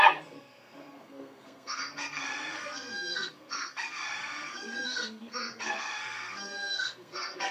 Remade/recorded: remade